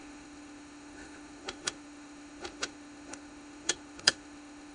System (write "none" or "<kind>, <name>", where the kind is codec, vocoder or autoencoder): autoencoder, DAC-VAE